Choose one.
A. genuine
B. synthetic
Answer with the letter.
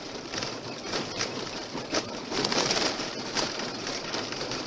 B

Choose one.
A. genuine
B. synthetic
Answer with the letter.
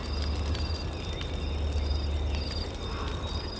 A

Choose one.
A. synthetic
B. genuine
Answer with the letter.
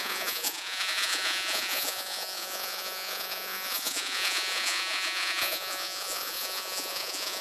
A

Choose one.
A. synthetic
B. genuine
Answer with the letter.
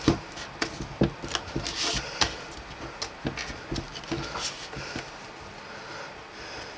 B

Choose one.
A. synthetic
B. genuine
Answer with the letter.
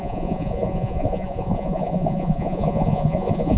A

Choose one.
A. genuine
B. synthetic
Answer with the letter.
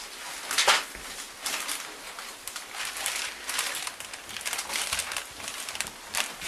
A